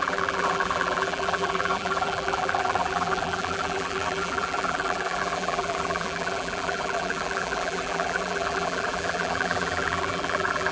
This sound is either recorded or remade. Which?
remade